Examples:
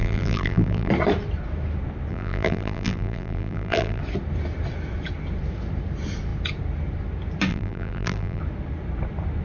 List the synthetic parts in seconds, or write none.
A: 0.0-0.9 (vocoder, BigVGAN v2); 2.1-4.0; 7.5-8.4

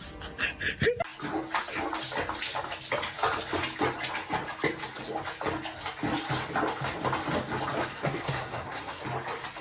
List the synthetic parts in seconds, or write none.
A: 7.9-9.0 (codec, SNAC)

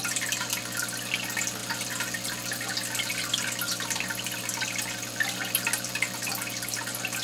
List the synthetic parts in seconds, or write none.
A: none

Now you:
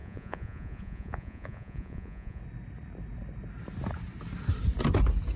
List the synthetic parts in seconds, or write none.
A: 0.0-2.4 (vocoder, Vocos)